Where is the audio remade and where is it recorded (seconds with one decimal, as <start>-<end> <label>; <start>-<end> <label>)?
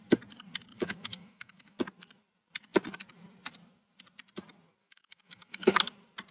0.0-0.7 recorded; 0.7-1.8 remade; 1.8-4.8 recorded; 4.8-5.8 remade; 5.8-6.3 recorded